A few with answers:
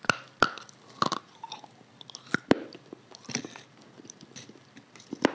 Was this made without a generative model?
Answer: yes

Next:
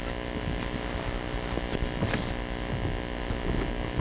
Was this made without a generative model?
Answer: yes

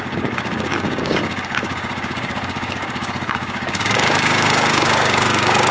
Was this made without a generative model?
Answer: no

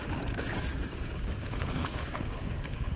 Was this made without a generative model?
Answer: no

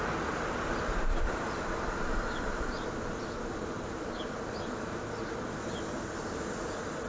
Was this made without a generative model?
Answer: yes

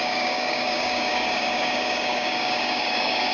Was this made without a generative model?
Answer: no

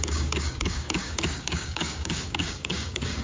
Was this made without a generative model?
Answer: no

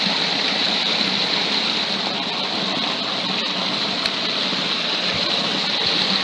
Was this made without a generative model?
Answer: yes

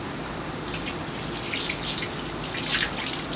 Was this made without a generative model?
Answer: yes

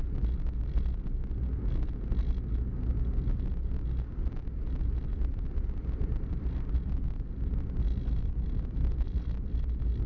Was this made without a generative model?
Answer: yes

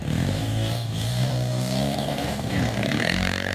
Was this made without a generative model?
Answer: no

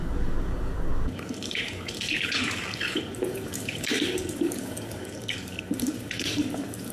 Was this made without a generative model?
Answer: no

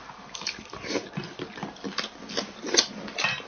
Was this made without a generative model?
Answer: yes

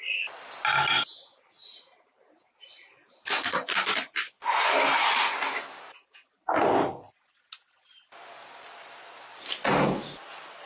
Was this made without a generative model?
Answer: yes